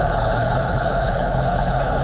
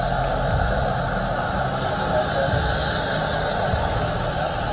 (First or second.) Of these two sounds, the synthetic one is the first